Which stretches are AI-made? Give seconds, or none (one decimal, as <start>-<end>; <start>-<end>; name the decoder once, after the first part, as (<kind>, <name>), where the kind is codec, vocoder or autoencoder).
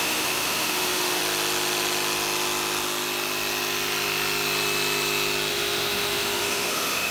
0.0-1.2 (autoencoder, DAC-VAE); 5.5-7.1